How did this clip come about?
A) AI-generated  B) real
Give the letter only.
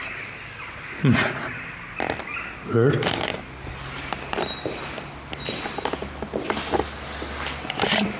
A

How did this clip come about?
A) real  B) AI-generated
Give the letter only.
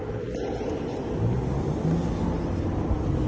A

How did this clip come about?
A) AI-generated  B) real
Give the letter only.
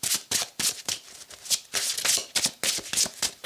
B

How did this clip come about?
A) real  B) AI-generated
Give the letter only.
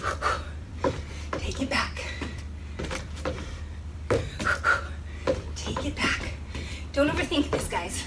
B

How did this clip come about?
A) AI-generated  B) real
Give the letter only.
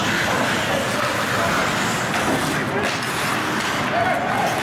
B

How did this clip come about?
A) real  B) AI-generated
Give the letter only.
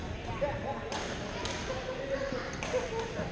A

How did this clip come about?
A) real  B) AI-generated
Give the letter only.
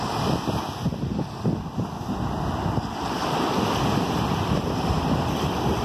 A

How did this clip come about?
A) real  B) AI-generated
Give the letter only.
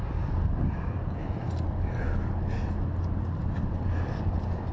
A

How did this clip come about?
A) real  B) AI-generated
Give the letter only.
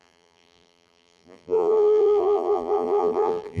B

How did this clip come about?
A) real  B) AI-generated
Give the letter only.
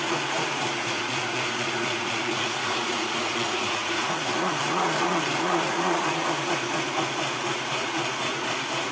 B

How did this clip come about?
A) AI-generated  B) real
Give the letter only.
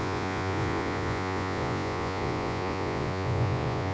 A